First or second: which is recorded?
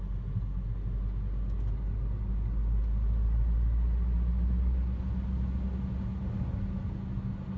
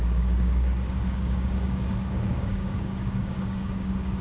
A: first